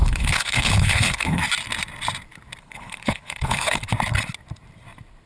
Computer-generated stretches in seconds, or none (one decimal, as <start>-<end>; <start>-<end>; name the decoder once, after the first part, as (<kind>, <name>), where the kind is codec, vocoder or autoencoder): 0.0-1.4 (codec, HILCodec); 2.6-3.9